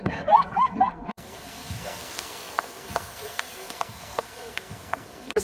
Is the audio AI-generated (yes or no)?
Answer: yes